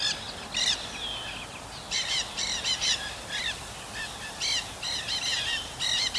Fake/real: real